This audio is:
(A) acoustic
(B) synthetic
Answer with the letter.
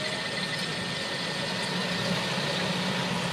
A